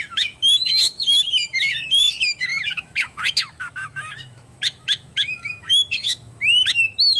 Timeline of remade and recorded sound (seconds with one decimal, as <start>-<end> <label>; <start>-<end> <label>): 0.0-7.2 remade